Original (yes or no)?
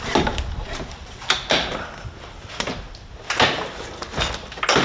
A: yes